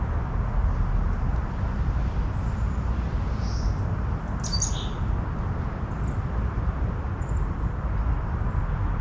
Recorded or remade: recorded